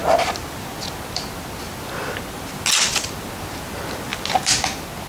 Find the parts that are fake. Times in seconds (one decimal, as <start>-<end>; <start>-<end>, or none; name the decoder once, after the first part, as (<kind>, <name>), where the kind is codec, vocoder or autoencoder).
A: none